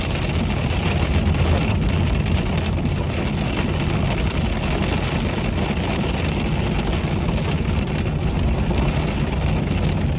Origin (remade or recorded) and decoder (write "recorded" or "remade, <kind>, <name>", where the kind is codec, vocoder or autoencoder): recorded